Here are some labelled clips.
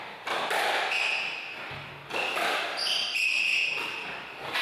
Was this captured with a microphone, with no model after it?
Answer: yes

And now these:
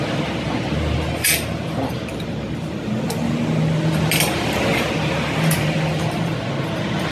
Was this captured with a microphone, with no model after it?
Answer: yes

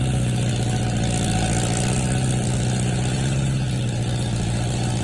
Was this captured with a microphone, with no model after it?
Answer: yes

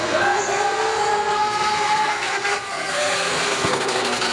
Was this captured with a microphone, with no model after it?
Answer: no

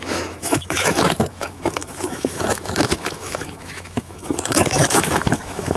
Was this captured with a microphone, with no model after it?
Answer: no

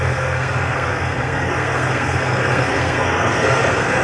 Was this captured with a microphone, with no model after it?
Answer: no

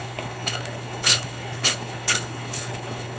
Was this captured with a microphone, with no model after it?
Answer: no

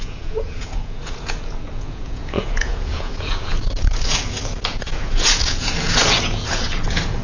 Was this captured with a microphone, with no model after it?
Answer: no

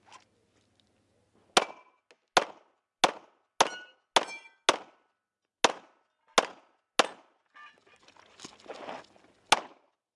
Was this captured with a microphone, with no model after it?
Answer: yes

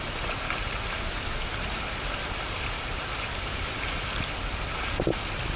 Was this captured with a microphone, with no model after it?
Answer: yes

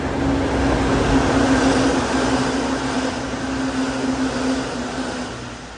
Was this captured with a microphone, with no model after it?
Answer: yes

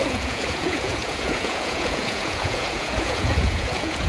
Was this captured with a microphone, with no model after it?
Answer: no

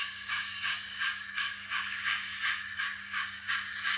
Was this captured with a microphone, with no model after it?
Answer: no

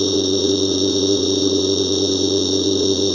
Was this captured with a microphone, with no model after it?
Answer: no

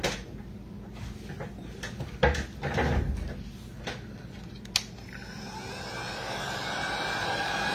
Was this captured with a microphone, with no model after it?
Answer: yes